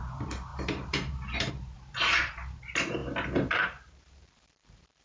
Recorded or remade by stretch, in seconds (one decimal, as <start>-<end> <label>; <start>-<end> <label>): 0.0-3.0 remade; 3.0-3.5 recorded; 3.5-5.0 remade